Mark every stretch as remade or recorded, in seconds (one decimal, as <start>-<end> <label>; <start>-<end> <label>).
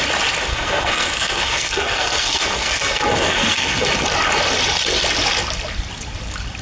0.0-0.5 recorded; 0.5-3.9 remade; 3.9-6.6 recorded